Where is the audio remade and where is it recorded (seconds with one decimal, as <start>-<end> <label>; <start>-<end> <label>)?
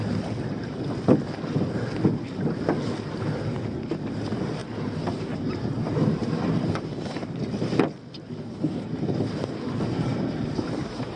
0.0-4.6 recorded; 4.6-9.0 remade; 9.0-10.1 recorded; 10.1-11.2 remade